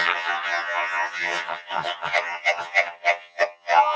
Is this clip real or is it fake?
fake